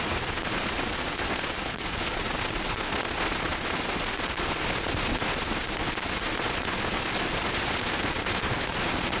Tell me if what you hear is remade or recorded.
remade